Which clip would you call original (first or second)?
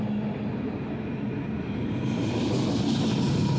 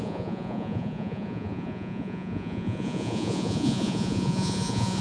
first